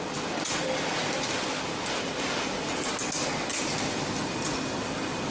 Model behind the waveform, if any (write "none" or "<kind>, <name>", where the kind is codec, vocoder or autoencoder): none